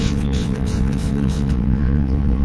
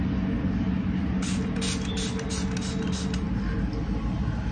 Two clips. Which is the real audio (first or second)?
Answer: second